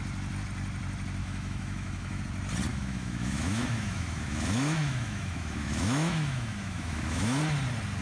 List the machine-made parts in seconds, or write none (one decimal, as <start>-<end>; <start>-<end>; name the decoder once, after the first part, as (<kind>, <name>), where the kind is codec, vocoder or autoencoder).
1.2-2.2 (autoencoder, DAC-VAE); 2.7-7.4